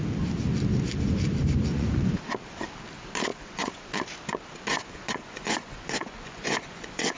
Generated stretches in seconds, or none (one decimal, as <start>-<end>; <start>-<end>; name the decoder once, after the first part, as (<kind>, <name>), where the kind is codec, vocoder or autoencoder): 1.7-2.2 (vocoder, Vocos); 3.3-3.9; 4.7-7.2